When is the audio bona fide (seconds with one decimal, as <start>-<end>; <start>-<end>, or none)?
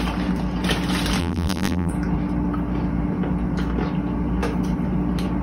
0.0-1.2; 1.9-5.4